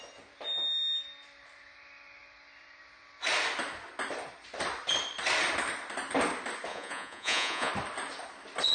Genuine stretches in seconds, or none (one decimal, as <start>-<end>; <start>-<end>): 0.0-6.7; 7.7-8.7